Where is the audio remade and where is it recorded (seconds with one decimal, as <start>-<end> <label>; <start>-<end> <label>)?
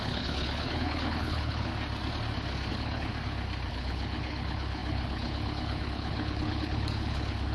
0.0-1.7 remade; 1.7-2.7 recorded; 2.7-3.1 remade; 3.1-3.7 recorded; 3.7-7.5 remade